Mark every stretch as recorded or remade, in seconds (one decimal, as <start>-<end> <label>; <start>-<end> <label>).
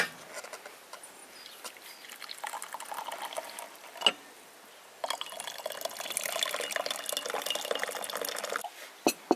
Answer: 0.0-9.4 recorded